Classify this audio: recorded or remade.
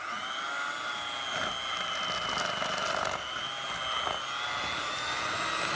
recorded